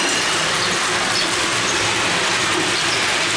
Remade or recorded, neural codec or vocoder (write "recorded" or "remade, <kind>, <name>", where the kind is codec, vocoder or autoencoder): recorded